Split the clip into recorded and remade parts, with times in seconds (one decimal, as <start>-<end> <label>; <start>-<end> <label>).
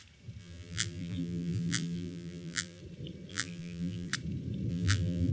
0.0-0.4 recorded; 0.4-2.8 remade; 2.8-3.3 recorded; 3.3-4.1 remade; 4.1-4.7 recorded; 4.7-5.3 remade